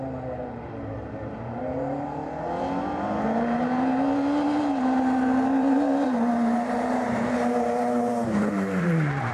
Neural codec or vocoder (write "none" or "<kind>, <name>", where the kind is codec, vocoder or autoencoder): vocoder, BigVGAN v2